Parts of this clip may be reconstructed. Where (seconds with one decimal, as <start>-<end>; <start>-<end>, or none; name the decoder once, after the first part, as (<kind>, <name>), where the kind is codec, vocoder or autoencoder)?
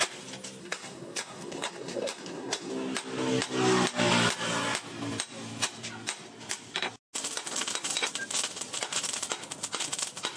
0.6-2.7 (codec, SNAC)